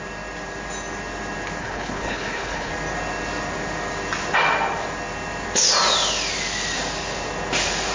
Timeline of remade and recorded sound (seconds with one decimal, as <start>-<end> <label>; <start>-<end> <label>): 0.0-1.6 recorded; 1.6-2.7 remade; 2.7-7.9 recorded